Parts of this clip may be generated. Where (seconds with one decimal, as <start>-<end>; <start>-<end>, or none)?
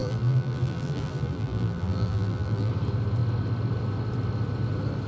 0.0-2.7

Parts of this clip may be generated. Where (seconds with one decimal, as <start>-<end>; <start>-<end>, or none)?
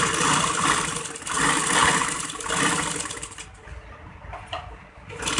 none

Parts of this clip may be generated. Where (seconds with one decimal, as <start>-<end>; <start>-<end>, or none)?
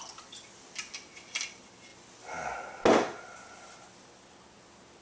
none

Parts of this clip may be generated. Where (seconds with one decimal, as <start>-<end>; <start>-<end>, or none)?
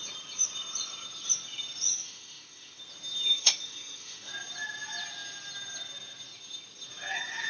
1.9-2.8; 3.3-4.3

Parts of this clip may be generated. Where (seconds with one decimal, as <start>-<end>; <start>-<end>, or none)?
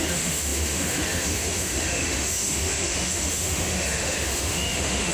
0.0-5.1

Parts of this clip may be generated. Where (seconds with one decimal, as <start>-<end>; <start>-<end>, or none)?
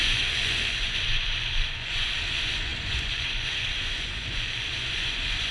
0.0-5.5